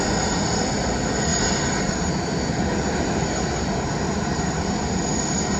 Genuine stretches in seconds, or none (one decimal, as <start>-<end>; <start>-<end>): 0.0-5.6